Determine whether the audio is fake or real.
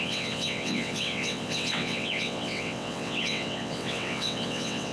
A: fake